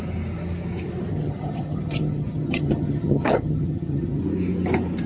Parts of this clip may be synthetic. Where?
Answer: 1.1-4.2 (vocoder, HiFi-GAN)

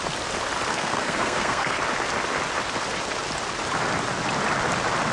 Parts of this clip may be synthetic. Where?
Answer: 0.7-1.8 (codec, SNAC)

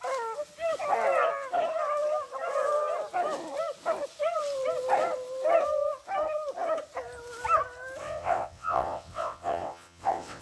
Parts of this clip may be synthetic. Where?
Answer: 8.0-10.4 (vocoder, WaveNeXt)

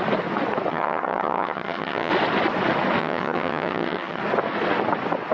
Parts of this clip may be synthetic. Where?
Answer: 0.7-2.1 (vocoder, HiFi-GAN); 3.0-4.2